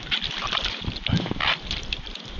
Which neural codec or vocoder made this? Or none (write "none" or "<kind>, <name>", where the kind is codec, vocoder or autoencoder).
none